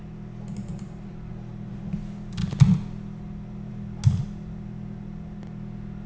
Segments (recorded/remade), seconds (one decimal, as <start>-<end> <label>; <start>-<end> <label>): 0.0-0.7 recorded; 0.7-1.3 remade; 1.3-6.1 recorded